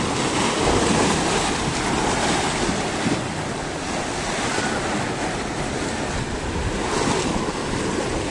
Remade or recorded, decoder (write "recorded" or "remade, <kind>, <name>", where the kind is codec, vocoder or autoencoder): recorded